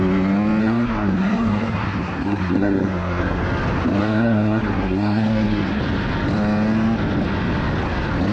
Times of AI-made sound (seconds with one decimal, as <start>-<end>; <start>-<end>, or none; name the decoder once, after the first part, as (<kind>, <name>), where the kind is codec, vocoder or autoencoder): 0.6-3.4 (codec, SNAC); 4.0-5.8